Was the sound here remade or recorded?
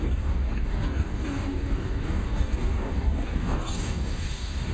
remade